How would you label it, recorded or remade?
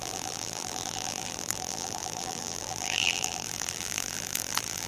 remade